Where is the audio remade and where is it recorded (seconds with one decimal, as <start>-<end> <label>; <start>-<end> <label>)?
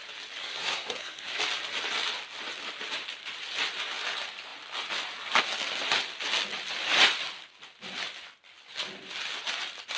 0.0-0.4 recorded; 0.4-1.4 remade; 1.4-10.0 recorded